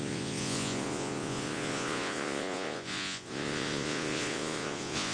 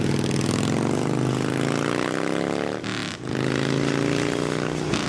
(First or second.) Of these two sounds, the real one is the second